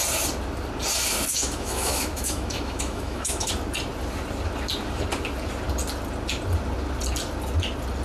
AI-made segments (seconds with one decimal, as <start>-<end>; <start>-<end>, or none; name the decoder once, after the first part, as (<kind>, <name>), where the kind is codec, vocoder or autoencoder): 1.3-3.5 (autoencoder, DAC-VAE)